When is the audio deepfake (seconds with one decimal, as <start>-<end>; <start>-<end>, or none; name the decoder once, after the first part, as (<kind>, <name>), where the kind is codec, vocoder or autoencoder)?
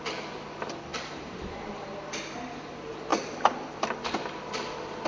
0.9-1.7 (vocoder, BigVGAN v2)